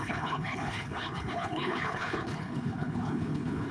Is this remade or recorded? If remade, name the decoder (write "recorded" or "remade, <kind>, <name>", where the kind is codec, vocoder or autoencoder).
remade, codec, HILCodec